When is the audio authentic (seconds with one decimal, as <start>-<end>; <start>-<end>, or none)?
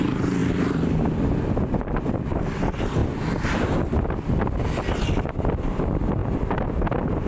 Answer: 0.0-0.4; 1.4-3.0; 4.4-7.3